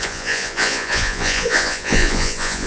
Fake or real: fake